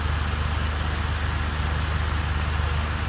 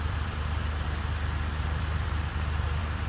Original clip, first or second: first